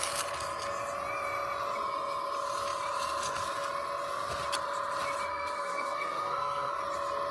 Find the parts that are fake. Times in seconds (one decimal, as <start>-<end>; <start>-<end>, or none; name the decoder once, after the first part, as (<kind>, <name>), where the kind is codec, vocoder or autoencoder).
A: 5.3-6.8 (codec, SNAC)